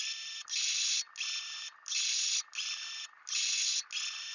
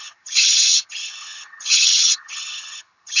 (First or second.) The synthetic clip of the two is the second